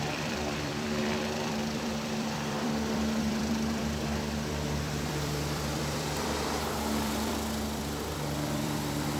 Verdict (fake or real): fake